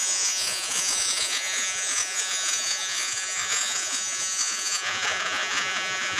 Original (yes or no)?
no